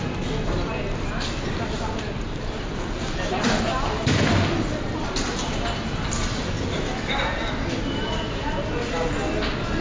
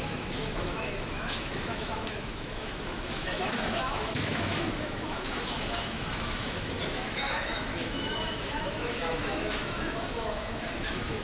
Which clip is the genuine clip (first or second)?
first